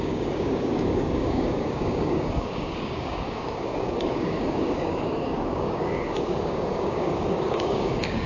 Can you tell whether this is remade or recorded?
remade